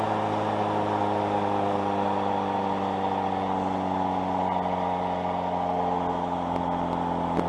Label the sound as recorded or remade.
recorded